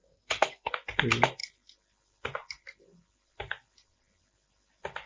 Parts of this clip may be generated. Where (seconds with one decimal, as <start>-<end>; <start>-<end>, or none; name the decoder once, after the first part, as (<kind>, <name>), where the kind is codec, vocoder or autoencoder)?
0.0-0.7 (codec, SNAC)